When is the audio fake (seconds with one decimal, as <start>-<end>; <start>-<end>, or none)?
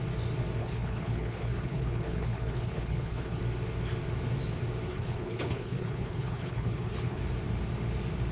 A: 0.6-3.4; 4.9-7.2